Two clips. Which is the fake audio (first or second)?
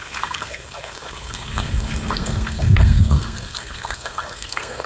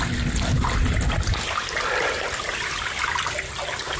first